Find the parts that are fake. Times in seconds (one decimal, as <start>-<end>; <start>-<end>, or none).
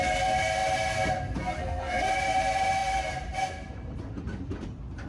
1.6-2.1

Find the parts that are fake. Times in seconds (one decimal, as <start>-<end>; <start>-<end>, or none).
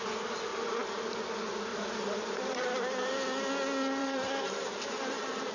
0.5-1.2; 1.7-3.1; 4.0-5.5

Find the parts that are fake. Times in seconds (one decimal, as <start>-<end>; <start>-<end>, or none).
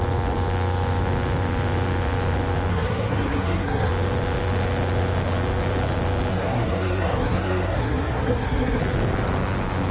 2.7-3.9; 6.3-8.8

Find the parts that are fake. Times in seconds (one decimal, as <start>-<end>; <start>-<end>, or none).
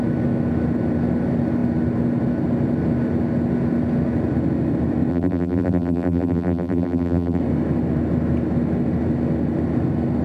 5.1-7.4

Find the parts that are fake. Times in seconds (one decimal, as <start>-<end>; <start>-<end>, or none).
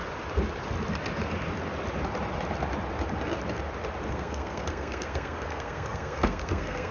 4.1-6.9